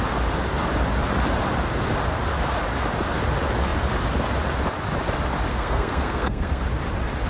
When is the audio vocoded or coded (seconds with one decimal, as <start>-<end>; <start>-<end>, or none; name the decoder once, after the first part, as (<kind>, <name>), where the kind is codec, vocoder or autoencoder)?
5.5-6.6 (codec, SNAC)